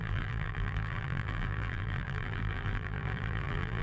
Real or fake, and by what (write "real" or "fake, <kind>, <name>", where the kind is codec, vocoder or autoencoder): fake, vocoder, BigVGAN v2